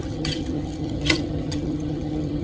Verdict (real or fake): fake